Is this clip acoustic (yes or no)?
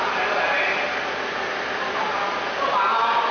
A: yes